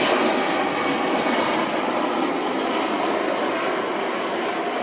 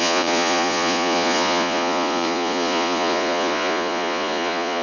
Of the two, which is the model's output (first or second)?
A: second